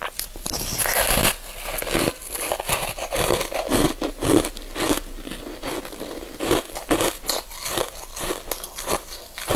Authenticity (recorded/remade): recorded